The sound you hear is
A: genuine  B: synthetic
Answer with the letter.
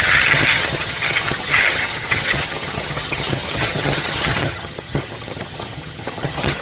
B